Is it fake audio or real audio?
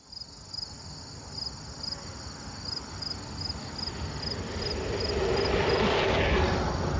real